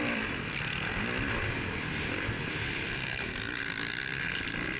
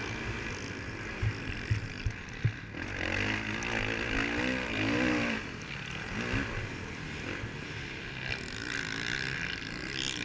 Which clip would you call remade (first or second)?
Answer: first